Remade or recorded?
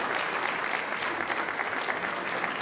recorded